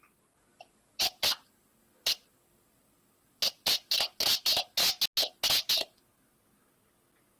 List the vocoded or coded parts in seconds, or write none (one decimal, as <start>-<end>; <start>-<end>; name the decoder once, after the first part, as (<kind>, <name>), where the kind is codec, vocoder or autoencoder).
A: 0.5-4.4 (vocoder, BigVGAN v2)